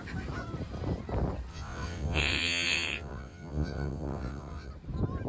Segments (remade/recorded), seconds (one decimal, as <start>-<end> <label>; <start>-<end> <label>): 0.0-1.5 recorded; 1.5-4.7 remade; 4.7-5.3 recorded